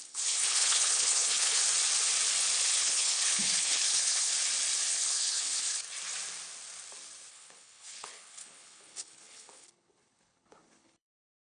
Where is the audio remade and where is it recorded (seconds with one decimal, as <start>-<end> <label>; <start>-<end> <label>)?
0.0-1.6 remade; 1.6-2.7 recorded; 2.7-4.3 remade; 4.3-4.9 recorded; 4.9-5.8 remade; 5.8-7.3 recorded; 7.3-11.5 remade